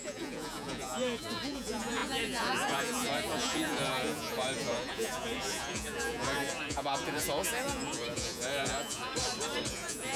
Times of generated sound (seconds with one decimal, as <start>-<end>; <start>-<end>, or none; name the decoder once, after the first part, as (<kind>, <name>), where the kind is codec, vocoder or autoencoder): 0.0-9.1 (vocoder, Vocos); 9.7-10.2